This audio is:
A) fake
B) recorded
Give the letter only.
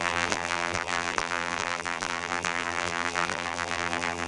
A